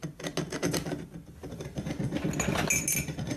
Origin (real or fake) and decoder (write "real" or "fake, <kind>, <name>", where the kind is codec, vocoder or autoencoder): real